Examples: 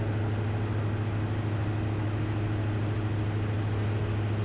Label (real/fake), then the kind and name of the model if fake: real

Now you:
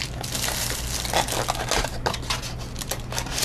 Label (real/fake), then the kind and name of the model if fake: real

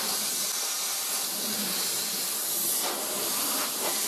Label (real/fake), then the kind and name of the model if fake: real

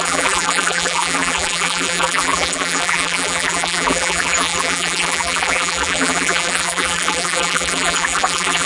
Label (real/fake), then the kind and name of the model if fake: fake, vocoder, BigVGAN v2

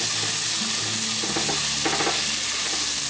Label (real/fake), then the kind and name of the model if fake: real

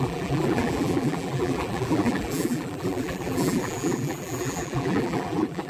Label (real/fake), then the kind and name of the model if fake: fake, vocoder, BigVGAN v2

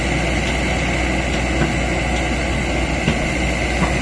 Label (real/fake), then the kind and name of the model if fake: real